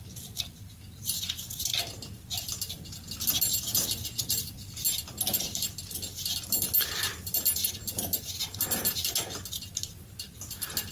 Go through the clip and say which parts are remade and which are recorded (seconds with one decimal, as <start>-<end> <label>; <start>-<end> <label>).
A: 0.0-10.9 recorded